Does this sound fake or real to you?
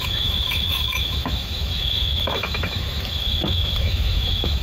fake